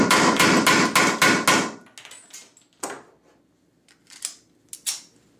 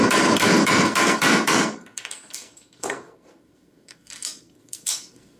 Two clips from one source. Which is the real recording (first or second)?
first